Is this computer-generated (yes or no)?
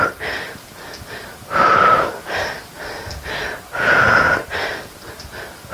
no